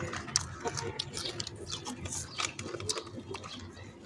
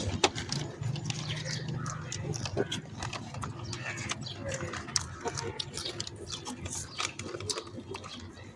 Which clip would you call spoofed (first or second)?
second